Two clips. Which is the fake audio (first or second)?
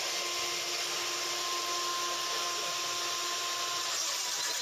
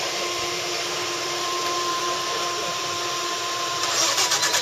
second